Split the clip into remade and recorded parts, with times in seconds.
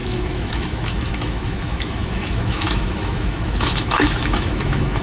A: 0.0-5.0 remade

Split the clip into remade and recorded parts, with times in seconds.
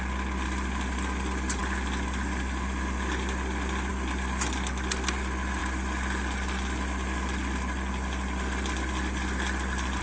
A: 0.0-10.0 recorded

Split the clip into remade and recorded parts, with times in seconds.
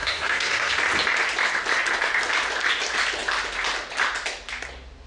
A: 0.0-0.7 remade; 0.7-5.1 recorded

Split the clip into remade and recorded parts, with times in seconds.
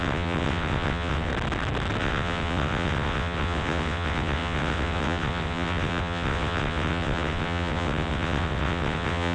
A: 0.0-1.3 remade; 1.3-2.0 recorded; 2.0-9.3 remade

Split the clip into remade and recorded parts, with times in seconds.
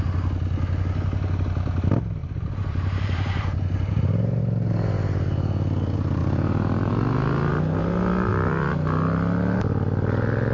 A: 0.0-2.2 recorded; 2.2-4.4 remade; 4.4-10.5 recorded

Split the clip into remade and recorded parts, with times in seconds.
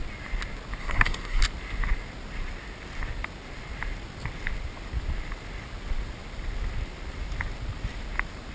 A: 0.0-0.8 recorded; 0.8-1.4 remade; 1.4-8.5 recorded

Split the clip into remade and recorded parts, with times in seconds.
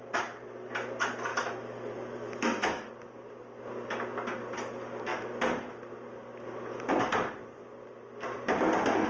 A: 0.0-1.3 recorded; 1.3-2.9 remade; 2.9-9.1 recorded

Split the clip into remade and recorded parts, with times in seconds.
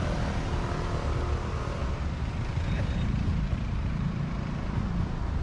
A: 0.0-1.8 recorded; 1.8-5.0 remade; 5.0-5.4 recorded